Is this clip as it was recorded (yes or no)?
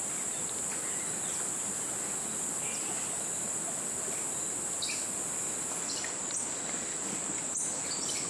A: yes